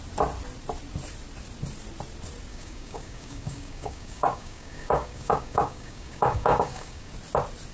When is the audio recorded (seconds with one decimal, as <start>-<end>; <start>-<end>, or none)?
0.0-2.5; 7.1-7.7